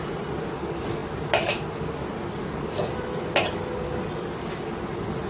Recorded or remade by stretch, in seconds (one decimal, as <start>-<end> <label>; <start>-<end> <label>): 0.0-5.3 recorded

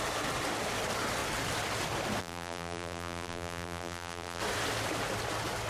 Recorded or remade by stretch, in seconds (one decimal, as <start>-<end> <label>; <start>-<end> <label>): 0.0-2.2 recorded; 2.2-4.4 remade; 4.4-5.7 recorded

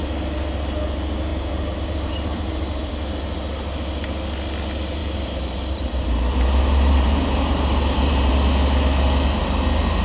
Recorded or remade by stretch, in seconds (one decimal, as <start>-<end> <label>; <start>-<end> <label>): 0.0-1.3 recorded; 1.3-2.9 remade; 2.9-5.0 recorded; 5.0-8.3 remade; 8.3-10.0 recorded

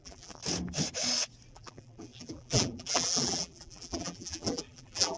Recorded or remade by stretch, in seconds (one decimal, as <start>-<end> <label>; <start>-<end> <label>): 0.0-0.4 remade; 0.4-1.5 recorded; 1.5-5.2 remade

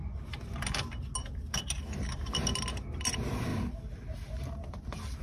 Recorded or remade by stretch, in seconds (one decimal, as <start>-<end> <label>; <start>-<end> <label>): 0.0-5.2 recorded

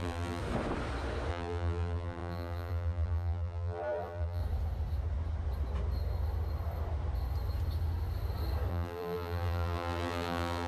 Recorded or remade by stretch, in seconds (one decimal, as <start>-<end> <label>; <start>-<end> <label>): 0.0-0.4 remade; 0.4-1.3 recorded; 1.3-4.4 remade; 4.4-8.7 recorded; 8.7-10.7 remade

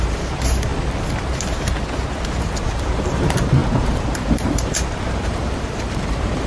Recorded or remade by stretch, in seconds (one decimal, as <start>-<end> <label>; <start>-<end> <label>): 0.0-0.7 remade; 0.7-2.4 recorded; 2.4-6.5 remade

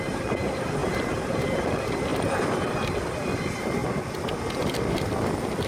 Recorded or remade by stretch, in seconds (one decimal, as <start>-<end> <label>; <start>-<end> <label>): 0.0-0.8 recorded; 0.8-1.7 remade; 1.7-2.1 recorded; 2.1-3.4 remade; 3.4-5.7 recorded